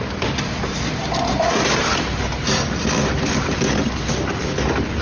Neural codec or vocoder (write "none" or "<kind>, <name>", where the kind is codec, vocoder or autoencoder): none